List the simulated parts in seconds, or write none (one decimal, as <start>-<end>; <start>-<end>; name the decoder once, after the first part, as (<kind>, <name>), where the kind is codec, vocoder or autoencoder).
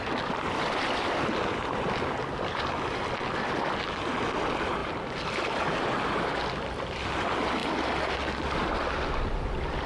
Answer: none